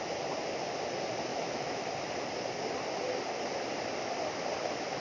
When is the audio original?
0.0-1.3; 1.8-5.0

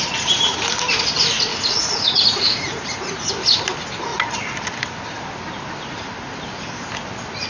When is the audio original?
0.0-1.5; 3.3-7.5